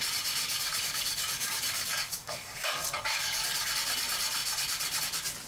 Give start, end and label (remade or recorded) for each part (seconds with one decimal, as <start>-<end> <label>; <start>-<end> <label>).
0.0-0.4 recorded; 0.4-3.7 remade; 3.7-5.5 recorded